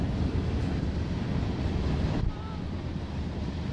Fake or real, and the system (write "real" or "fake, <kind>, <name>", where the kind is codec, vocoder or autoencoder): fake, vocoder, BigVGAN v2